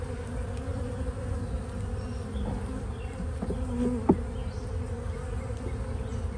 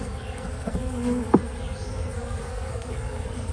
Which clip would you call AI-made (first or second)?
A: second